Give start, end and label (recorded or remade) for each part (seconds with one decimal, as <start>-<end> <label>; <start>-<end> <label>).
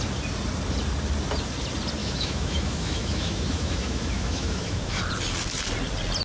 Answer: 0.0-2.0 recorded; 2.0-5.0 remade; 5.0-6.2 recorded